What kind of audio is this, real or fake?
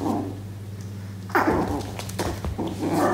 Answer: real